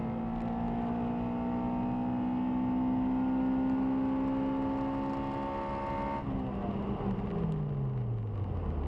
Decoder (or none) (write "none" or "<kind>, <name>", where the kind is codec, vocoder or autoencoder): none